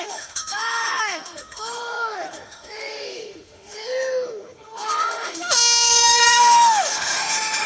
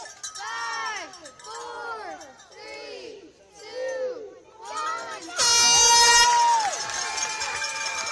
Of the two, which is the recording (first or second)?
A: second